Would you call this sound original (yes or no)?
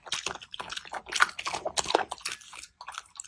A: yes